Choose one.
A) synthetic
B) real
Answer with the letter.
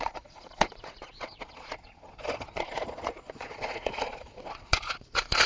A